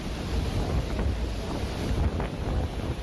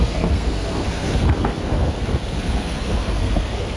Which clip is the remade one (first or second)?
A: second